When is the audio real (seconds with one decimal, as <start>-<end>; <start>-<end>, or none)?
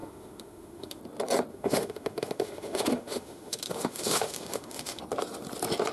1.0-1.5; 5.0-5.9